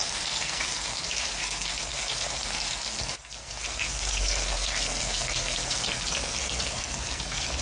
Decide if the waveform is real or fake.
fake